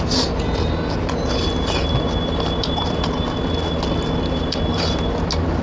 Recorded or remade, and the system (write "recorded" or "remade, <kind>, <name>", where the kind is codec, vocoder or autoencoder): recorded